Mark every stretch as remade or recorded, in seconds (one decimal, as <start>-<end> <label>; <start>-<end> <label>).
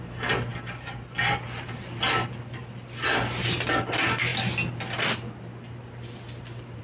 0.0-6.8 recorded